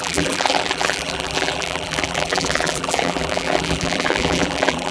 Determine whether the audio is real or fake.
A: fake